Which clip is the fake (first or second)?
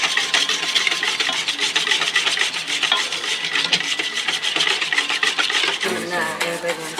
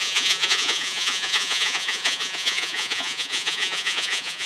second